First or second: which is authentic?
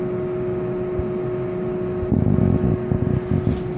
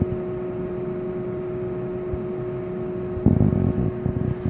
first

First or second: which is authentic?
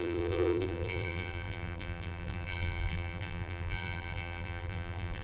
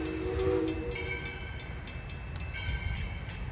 second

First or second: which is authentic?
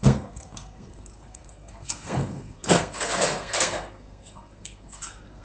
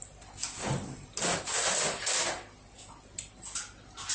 second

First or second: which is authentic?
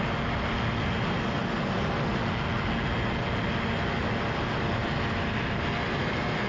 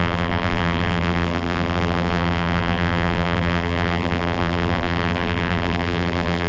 first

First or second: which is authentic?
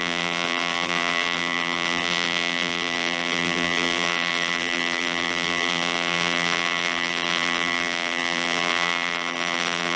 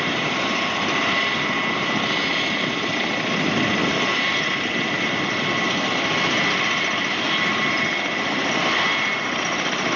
second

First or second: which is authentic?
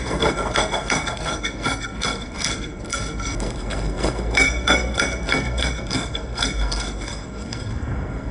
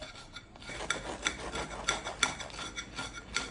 second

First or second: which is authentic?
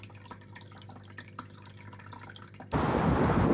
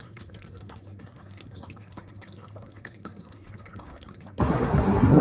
first